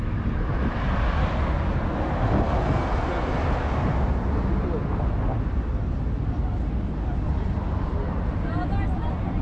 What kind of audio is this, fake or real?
real